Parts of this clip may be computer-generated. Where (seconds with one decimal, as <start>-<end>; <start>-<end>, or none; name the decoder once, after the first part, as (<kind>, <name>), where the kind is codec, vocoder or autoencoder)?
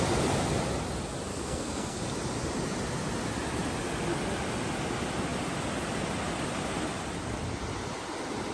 1.3-2.0 (codec, SNAC)